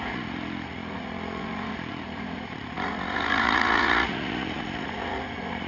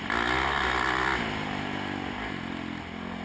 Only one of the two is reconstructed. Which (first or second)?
first